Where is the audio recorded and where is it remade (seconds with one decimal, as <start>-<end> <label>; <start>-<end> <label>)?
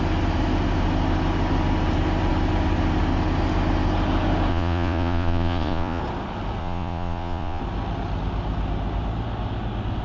0.0-4.5 recorded; 4.5-6.0 remade; 6.0-6.6 recorded; 6.6-7.6 remade; 7.6-10.0 recorded